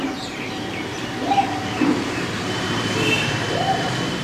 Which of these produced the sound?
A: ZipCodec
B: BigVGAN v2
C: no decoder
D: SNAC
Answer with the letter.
B